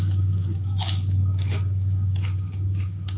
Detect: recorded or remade remade